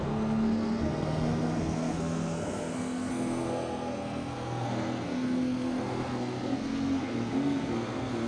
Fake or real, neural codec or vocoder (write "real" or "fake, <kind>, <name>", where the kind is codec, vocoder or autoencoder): fake, codec, SNAC